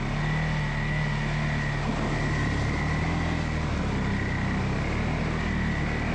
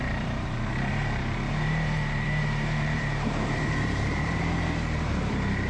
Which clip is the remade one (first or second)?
second